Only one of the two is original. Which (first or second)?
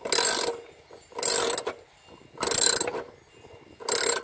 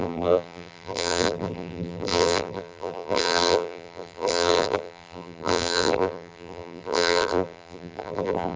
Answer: first